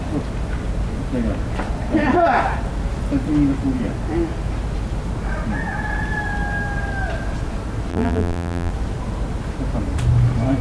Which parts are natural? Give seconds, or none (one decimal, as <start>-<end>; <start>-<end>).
0.0-7.9; 8.7-10.6